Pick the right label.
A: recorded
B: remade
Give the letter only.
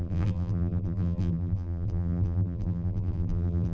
B